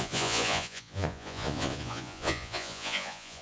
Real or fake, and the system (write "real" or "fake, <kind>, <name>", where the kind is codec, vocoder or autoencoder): fake, vocoder, Vocos